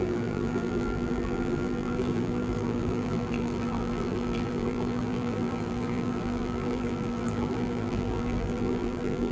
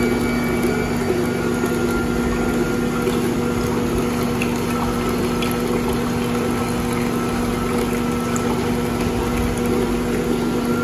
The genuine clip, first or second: second